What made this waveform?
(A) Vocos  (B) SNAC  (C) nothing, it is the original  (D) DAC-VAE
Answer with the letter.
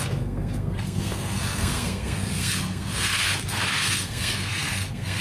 B